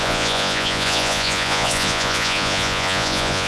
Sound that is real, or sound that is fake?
fake